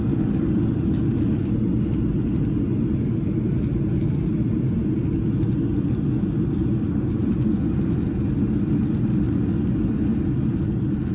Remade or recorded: recorded